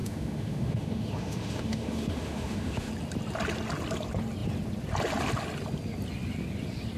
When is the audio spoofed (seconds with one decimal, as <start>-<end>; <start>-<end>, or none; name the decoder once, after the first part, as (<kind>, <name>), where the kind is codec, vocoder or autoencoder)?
0.0-2.9 (autoencoder, DAC-VAE)